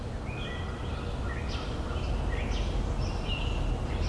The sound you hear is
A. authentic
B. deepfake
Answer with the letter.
A